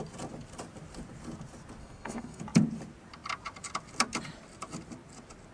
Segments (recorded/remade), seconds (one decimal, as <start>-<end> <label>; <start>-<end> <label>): 0.0-1.8 recorded; 1.8-2.4 remade; 2.4-5.5 recorded